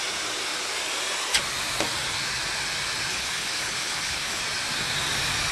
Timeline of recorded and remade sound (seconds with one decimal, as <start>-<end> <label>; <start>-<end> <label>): 0.0-3.1 recorded; 3.1-4.4 remade; 4.4-5.5 recorded